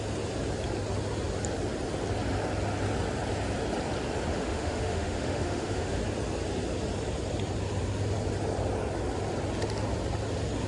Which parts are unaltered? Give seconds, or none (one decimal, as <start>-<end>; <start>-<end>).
0.0-4.3; 6.0-10.7